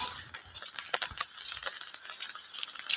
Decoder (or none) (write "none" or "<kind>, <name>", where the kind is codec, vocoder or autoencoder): vocoder, BigVGAN v2